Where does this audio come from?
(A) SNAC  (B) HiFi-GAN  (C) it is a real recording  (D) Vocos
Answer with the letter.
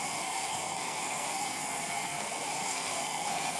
A